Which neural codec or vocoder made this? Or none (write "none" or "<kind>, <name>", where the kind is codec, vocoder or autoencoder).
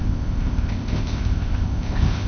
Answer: codec, ZipCodec